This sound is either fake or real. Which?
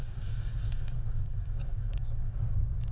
fake